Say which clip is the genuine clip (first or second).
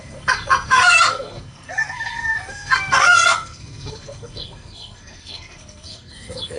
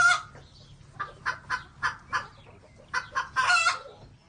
second